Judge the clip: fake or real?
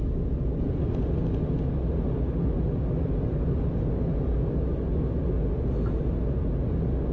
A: real